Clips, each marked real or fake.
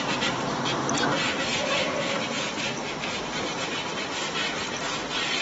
real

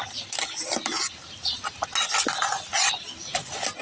real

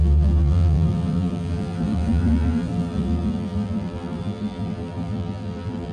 fake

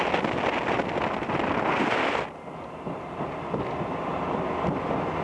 real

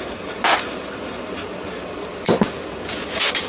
real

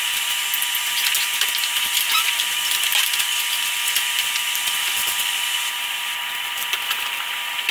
fake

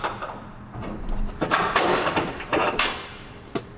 fake